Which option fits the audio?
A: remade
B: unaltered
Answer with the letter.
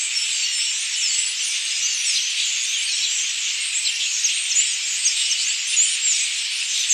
B